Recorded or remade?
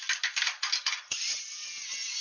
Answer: recorded